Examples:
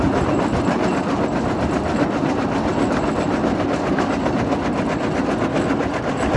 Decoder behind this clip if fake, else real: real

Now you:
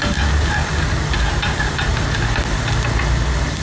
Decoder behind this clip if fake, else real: real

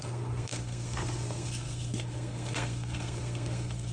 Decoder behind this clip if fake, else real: fake, codec, SNAC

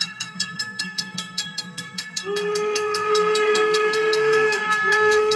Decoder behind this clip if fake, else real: fake, codec, SNAC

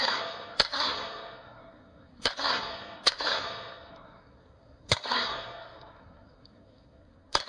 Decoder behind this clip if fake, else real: fake, codec, SNAC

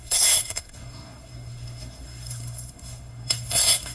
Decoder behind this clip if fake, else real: fake, codec, SNAC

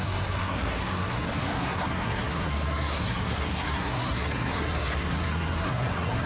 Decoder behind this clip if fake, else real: fake, codec, SNAC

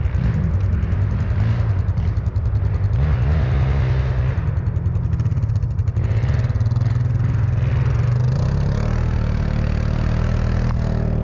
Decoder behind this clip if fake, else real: real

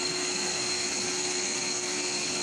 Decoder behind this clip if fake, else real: fake, codec, SNAC